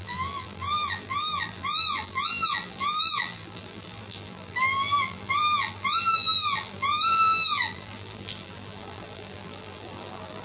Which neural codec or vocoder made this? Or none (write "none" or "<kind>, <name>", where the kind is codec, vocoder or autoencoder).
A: vocoder, BigVGAN v2